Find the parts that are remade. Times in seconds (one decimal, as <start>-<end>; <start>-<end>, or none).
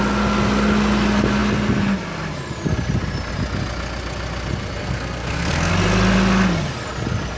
4.8-5.7